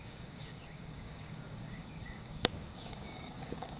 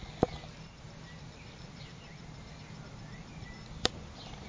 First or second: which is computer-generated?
first